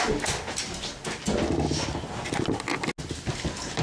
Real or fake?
real